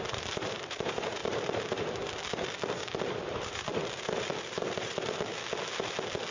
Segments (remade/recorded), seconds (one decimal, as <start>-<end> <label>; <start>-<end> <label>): 0.0-1.2 remade; 1.2-3.2 recorded; 3.2-3.7 remade; 3.7-4.4 recorded; 4.4-5.3 remade; 5.3-6.3 recorded